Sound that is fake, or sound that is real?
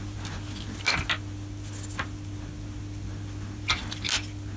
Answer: real